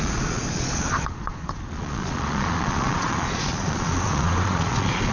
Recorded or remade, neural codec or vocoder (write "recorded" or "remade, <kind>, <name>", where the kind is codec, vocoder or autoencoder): remade, vocoder, Vocos